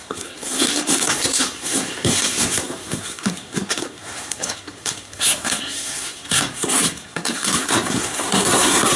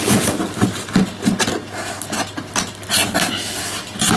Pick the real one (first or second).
second